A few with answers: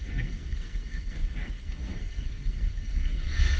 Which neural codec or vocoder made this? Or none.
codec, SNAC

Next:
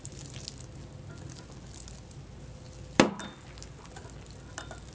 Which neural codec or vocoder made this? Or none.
none